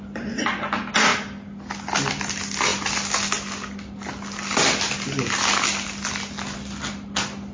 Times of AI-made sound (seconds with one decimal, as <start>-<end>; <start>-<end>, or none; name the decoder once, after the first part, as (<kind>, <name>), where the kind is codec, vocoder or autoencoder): none